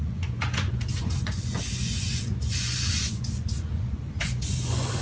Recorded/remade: remade